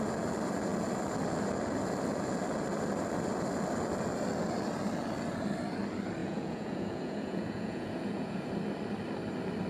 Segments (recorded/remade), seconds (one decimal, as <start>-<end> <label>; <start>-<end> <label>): 0.0-6.2 recorded; 6.2-8.5 remade; 8.5-9.7 recorded